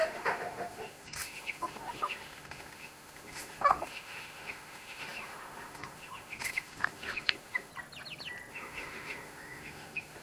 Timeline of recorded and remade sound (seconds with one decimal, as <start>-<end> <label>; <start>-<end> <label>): 0.0-7.7 remade; 7.7-8.5 recorded; 8.5-10.2 remade